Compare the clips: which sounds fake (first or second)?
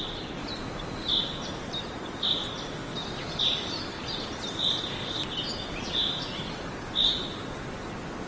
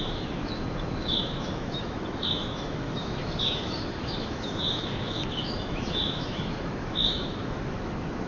second